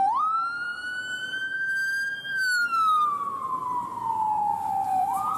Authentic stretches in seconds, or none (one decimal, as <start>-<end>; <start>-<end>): none

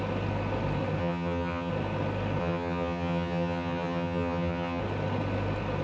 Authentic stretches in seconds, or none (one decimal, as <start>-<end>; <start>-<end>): 0.0-1.0; 1.7-2.4; 4.8-5.8